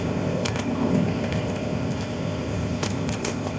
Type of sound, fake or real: fake